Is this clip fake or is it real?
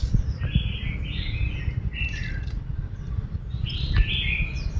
real